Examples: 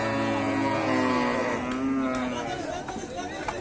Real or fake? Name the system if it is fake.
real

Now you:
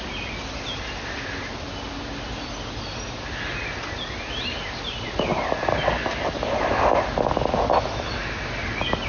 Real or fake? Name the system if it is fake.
real